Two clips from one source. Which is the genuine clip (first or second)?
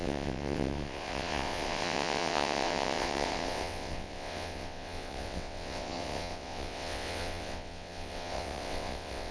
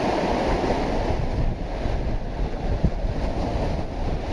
second